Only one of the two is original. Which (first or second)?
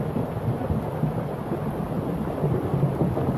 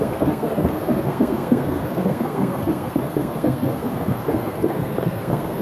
first